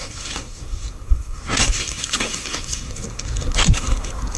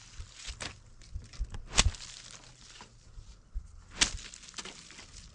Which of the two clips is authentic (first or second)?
second